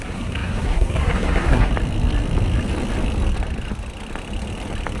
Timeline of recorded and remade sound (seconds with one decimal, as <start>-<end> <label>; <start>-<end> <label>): 0.0-1.7 remade; 1.7-5.0 recorded